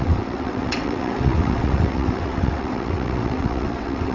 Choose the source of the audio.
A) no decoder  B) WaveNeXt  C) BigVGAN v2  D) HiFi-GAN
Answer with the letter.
B